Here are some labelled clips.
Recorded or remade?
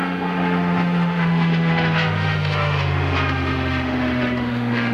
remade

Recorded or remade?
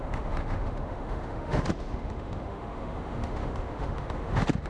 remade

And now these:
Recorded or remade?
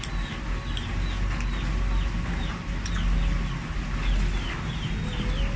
recorded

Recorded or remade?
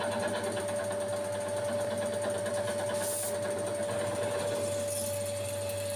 recorded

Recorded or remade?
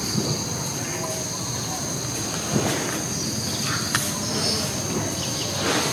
recorded